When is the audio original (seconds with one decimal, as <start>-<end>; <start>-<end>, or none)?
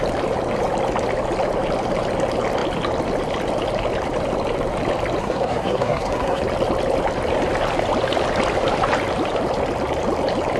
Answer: 0.0-5.2; 6.4-10.6